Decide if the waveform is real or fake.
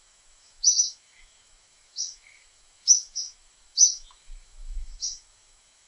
fake